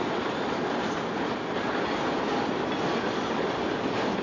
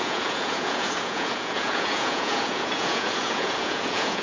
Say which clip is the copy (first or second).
second